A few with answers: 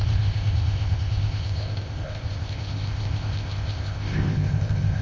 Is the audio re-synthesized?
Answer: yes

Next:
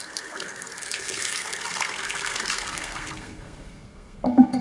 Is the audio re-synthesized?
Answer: yes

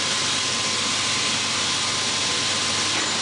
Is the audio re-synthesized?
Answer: no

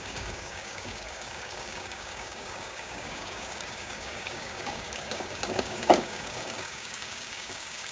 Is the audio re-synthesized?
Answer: yes